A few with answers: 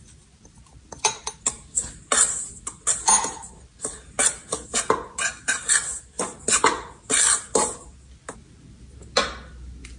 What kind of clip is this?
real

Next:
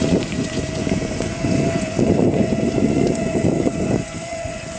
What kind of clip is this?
fake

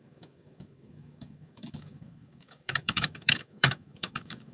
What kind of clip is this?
fake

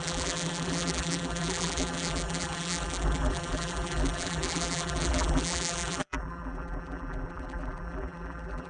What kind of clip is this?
fake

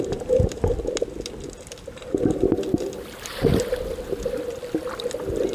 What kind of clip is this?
real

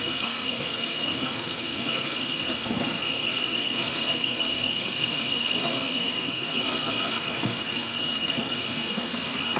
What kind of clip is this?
fake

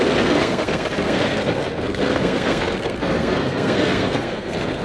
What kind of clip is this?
fake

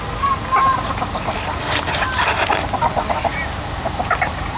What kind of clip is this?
real